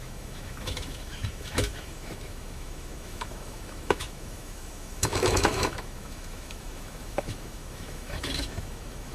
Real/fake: fake